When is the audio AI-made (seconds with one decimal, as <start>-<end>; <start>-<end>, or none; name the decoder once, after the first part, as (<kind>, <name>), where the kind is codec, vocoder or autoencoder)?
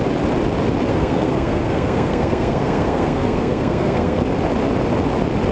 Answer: 0.9-4.2 (codec, SNAC)